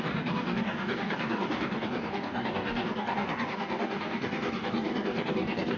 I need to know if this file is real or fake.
fake